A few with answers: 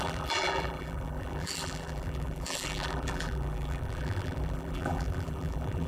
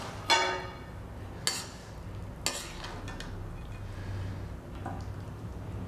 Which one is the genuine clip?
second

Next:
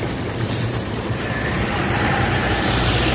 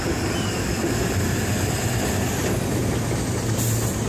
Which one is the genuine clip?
second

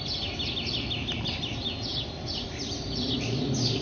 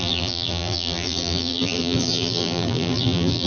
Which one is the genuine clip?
first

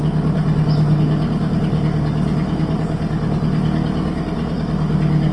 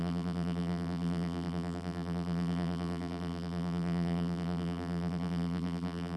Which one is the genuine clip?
first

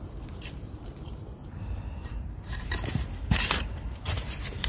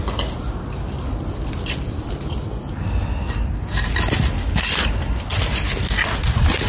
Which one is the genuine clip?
second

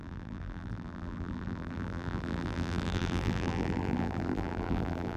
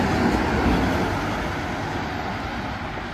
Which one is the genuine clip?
second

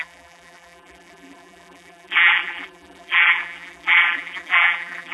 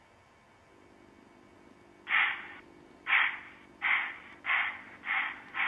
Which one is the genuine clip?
second